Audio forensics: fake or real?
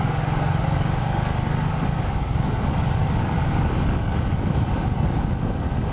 fake